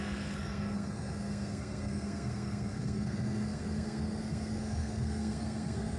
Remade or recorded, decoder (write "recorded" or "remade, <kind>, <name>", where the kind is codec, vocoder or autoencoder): remade, codec, SNAC